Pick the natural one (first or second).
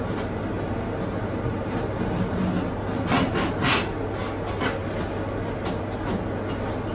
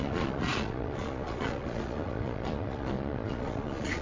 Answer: first